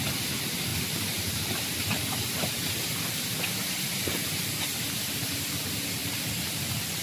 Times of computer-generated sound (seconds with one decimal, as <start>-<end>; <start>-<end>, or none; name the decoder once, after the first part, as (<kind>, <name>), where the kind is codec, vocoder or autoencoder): 0.7-4.9 (vocoder, BigVGAN v2)